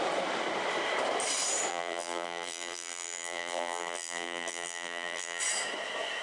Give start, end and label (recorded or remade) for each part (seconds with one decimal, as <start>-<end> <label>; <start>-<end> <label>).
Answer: 0.0-1.7 recorded; 1.7-5.4 remade; 5.4-6.2 recorded